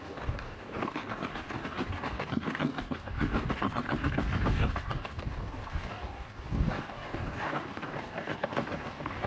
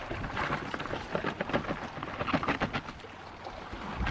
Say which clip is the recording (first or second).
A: second